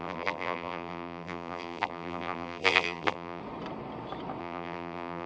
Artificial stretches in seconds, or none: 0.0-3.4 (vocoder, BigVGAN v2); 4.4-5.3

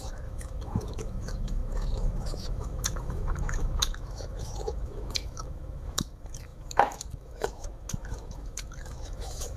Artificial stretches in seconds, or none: 0.0-9.6 (autoencoder, DAC-VAE)